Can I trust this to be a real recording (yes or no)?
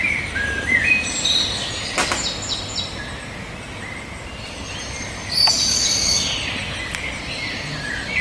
yes